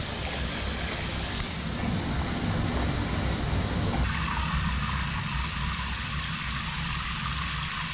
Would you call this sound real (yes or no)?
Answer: yes